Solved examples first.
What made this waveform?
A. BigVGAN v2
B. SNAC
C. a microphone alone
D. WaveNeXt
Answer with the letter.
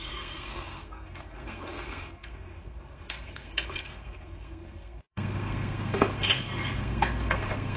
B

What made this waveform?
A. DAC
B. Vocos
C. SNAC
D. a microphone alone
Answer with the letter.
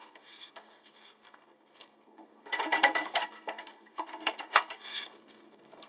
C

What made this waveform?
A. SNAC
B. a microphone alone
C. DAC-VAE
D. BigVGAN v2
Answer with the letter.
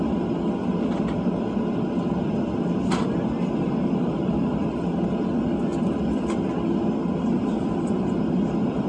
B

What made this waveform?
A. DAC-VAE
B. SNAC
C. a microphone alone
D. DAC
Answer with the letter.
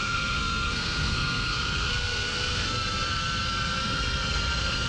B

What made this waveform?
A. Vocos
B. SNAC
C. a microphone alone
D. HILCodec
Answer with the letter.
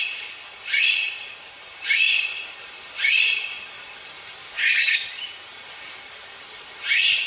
C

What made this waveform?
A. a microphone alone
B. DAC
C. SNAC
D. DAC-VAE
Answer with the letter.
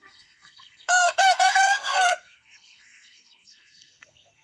C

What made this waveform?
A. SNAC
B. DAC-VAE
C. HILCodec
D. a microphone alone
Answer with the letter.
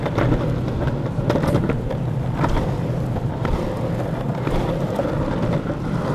D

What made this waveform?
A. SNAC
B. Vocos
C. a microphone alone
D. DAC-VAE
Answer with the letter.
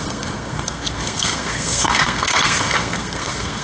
A